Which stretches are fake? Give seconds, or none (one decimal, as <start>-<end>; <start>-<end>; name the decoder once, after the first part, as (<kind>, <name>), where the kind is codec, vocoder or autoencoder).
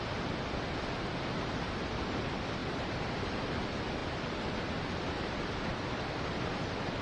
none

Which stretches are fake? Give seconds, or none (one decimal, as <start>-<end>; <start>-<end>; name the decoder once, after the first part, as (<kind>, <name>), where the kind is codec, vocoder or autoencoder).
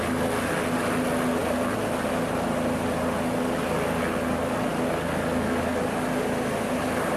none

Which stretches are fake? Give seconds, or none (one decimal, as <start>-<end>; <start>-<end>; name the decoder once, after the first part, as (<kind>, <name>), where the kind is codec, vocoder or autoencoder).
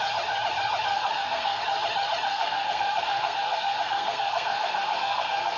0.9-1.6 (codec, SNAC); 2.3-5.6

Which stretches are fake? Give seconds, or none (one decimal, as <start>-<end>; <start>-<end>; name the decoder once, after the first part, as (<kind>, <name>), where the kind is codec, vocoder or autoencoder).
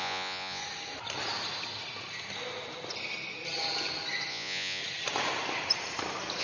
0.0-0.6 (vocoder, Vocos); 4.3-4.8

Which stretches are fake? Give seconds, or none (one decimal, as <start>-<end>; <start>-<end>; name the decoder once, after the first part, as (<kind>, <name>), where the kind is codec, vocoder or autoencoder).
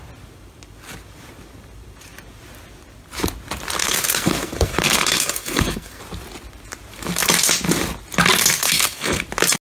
3.8-6.0 (codec, SNAC); 8.6-9.2